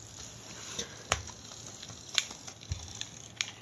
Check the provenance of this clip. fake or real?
real